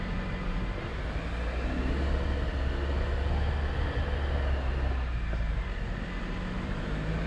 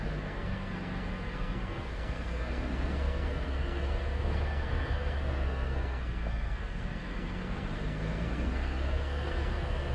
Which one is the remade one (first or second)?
second